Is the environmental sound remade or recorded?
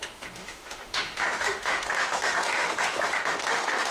remade